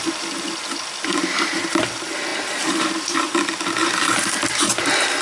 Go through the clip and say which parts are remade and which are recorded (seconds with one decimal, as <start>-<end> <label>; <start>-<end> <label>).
0.0-2.3 recorded; 2.3-3.3 remade; 3.3-3.8 recorded; 3.8-4.4 remade; 4.4-5.2 recorded

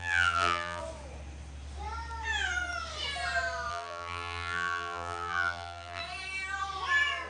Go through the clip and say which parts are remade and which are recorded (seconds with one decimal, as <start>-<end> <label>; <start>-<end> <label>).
0.0-0.8 remade; 0.8-3.7 recorded; 3.7-6.0 remade; 6.0-7.3 recorded